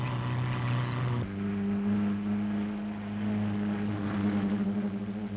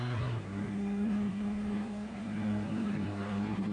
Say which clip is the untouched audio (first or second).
first